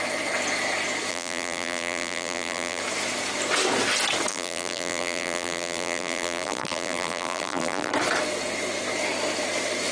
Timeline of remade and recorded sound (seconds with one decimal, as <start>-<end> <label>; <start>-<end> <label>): 0.0-1.1 recorded; 1.1-2.8 remade; 2.8-4.3 recorded; 4.3-7.9 remade; 7.9-9.9 recorded